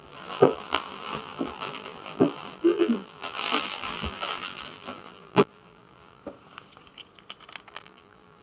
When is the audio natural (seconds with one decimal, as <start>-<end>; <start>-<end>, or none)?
6.2-7.7